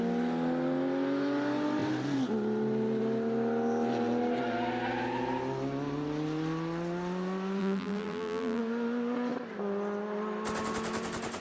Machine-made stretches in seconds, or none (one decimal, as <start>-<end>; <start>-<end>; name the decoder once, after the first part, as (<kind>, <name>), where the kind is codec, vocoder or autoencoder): 7.6-8.6 (vocoder, BigVGAN v2)